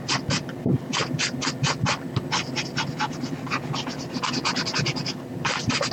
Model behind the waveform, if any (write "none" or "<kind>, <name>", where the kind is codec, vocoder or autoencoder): none